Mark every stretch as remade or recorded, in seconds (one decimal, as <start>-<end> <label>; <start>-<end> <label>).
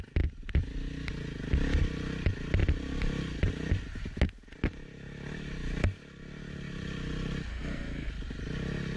0.0-7.5 recorded; 7.5-8.1 remade; 8.1-9.0 recorded